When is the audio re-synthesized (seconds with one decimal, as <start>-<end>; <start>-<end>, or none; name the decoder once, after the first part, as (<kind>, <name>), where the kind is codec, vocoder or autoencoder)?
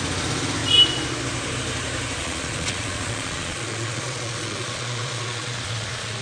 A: 2.2-6.2 (vocoder, Vocos)